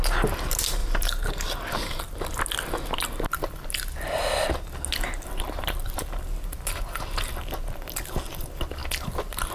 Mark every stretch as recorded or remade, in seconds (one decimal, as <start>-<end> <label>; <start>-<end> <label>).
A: 0.0-0.8 recorded; 0.8-1.3 remade; 1.3-8.8 recorded; 8.8-9.5 remade